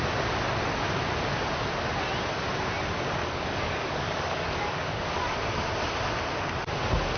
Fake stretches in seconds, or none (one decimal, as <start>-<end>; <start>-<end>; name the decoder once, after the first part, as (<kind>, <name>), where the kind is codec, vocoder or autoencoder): 3.2-5.5 (codec, DAC)